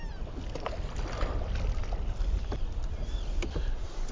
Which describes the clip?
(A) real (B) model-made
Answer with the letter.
A